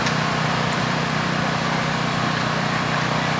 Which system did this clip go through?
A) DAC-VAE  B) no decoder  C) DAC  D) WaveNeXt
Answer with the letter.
B